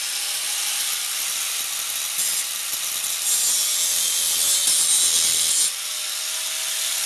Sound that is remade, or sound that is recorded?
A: recorded